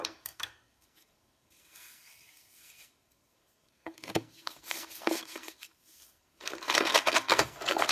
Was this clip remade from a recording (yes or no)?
yes